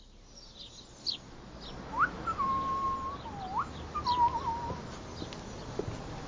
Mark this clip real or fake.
real